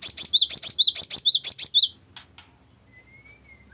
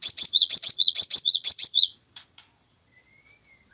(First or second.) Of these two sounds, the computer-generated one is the second